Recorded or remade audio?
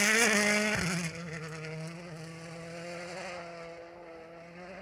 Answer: recorded